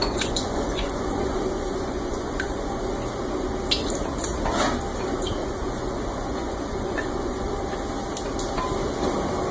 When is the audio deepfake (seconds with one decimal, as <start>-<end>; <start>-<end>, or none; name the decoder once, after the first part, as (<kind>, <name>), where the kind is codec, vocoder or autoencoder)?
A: 0.0-2.8 (vocoder, Vocos); 5.4-7.5